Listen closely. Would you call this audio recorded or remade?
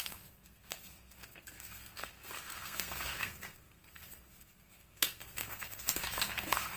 remade